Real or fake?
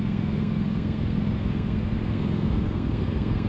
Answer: fake